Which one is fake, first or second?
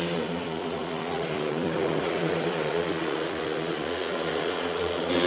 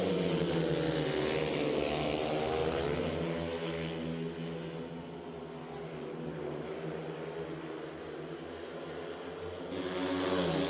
first